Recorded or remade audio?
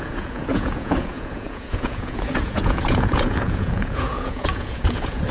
remade